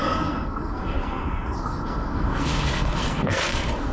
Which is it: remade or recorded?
remade